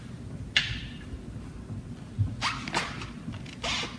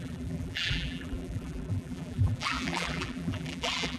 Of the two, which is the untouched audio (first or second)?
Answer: first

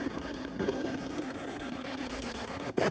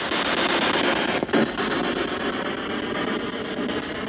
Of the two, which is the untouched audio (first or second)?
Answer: second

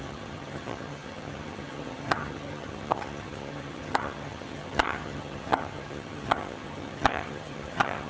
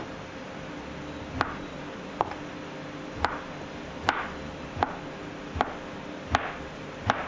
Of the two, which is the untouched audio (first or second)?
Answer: second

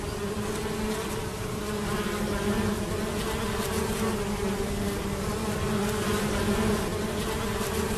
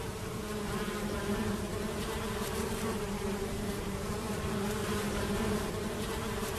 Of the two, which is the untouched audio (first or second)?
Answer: first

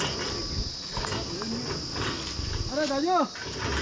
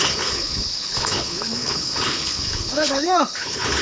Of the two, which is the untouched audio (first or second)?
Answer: first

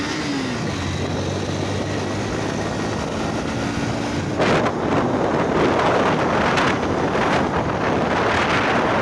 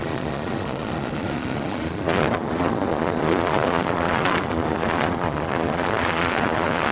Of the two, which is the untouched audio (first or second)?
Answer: first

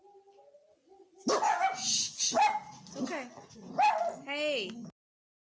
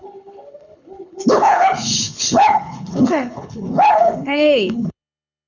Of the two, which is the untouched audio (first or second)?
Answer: first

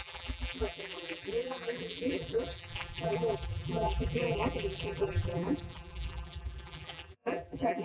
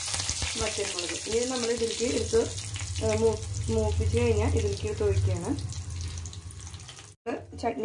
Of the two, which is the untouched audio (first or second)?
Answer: second